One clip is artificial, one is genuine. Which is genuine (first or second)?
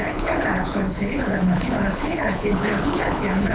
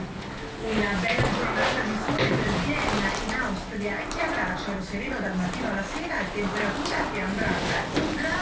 second